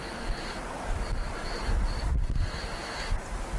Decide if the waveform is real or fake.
real